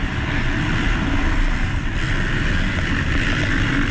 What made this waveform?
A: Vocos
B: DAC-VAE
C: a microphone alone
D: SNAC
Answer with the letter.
C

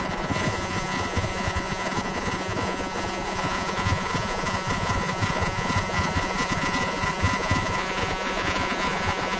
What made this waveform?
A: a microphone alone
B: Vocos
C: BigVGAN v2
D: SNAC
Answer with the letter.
B